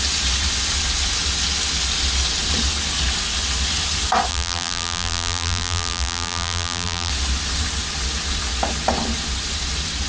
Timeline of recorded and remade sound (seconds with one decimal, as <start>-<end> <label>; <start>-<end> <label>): 0.0-4.3 recorded; 4.3-7.1 remade; 7.1-10.1 recorded